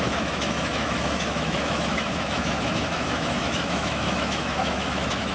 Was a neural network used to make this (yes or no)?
yes